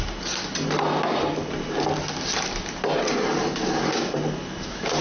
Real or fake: real